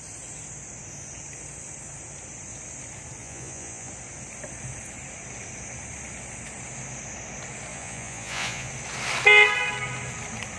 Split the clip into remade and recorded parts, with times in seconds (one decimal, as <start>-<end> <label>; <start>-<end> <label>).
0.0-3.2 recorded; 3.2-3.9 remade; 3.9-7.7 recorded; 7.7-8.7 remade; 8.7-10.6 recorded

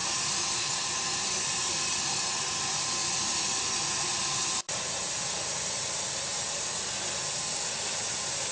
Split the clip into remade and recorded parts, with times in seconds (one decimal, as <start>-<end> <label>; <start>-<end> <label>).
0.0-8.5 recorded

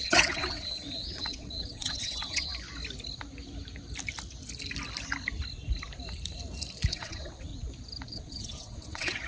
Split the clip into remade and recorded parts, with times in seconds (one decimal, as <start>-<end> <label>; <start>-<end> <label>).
0.0-2.5 remade; 2.5-6.9 recorded; 6.9-7.5 remade; 7.5-8.1 recorded; 8.1-9.3 remade